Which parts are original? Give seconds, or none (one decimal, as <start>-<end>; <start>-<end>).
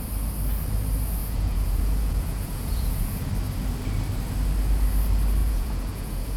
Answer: 0.0-1.2; 3.3-5.4